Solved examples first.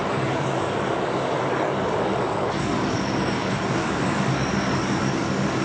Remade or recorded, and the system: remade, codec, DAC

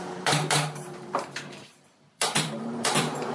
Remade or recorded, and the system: remade, vocoder, BigVGAN v2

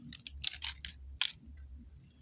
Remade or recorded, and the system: recorded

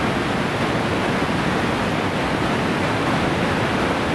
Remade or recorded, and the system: recorded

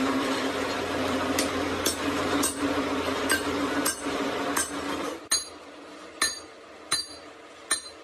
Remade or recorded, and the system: recorded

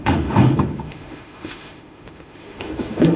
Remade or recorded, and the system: remade, autoencoder, DAC-VAE